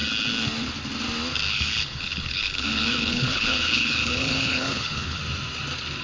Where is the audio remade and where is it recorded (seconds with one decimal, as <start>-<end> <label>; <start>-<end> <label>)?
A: 0.0-1.5 recorded; 1.5-5.2 remade; 5.2-6.0 recorded